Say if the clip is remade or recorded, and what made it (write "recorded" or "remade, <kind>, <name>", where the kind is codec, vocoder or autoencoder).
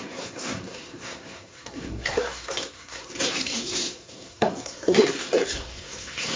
remade, codec, SNAC